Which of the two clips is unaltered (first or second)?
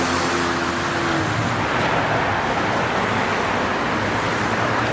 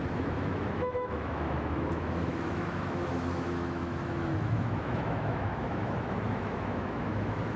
first